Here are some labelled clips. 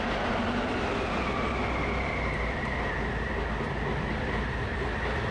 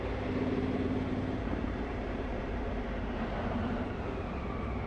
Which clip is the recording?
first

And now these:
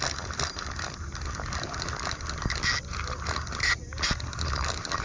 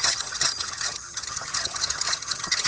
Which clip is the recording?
first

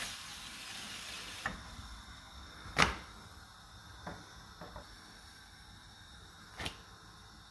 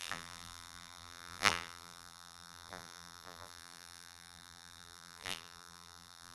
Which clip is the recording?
first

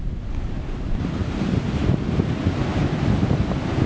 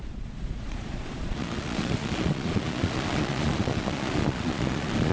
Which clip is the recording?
first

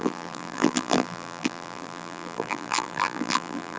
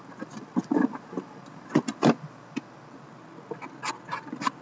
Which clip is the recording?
second